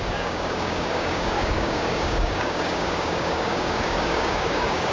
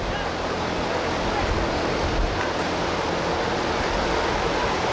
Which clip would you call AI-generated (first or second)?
first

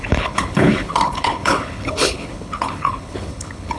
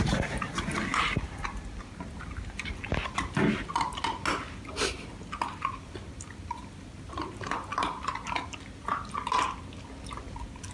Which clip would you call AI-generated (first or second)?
first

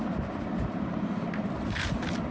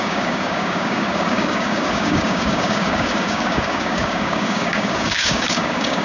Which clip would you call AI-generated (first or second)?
second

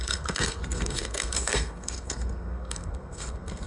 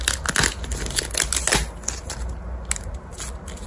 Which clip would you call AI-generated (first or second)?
first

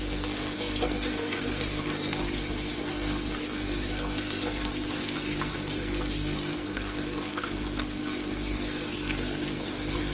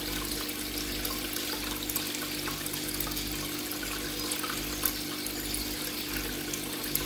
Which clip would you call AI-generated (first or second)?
first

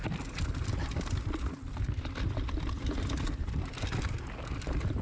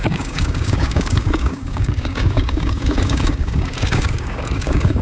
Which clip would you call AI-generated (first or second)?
second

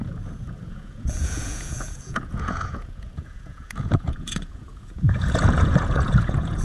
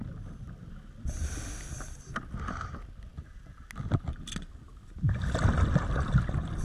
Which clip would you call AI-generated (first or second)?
first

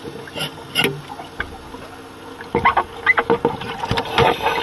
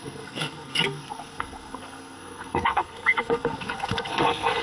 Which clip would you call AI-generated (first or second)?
second